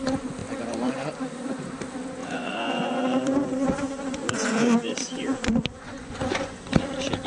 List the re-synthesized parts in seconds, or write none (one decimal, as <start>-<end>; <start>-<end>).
2.2-6.6